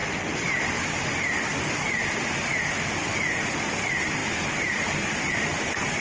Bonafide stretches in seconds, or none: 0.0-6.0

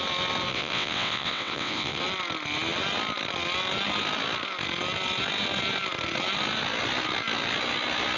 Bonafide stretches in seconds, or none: 0.0-0.5; 2.0-8.2